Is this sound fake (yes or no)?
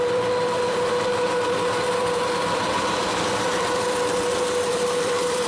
yes